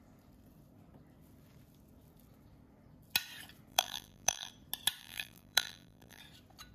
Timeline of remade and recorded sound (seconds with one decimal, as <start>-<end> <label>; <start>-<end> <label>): 0.0-3.7 recorded; 3.7-4.5 remade; 4.5-5.0 recorded; 5.0-6.2 remade; 6.2-6.7 recorded